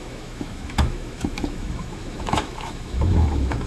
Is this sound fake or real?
fake